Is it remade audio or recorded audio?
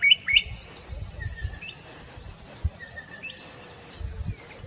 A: recorded